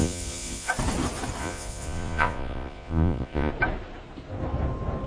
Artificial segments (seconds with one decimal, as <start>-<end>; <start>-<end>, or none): 0.0-0.7; 1.4-3.5